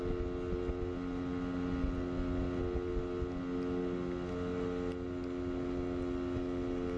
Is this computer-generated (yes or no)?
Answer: no